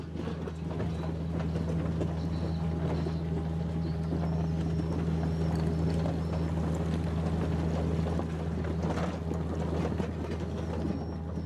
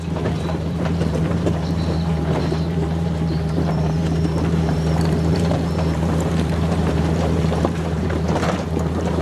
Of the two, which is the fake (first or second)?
second